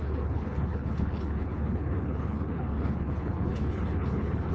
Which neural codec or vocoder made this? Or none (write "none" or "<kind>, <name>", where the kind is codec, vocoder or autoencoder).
codec, HILCodec